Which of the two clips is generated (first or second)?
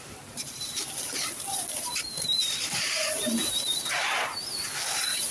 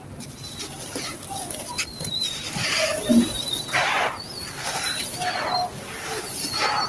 first